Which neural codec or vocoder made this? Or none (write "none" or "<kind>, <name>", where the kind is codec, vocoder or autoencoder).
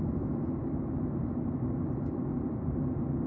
vocoder, BigVGAN v2